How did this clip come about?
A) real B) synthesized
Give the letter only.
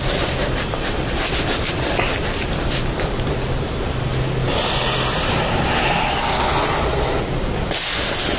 A